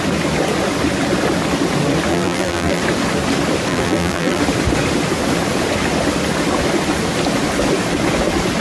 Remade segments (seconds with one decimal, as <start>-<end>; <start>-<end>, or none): 2.1-2.8; 3.7-4.4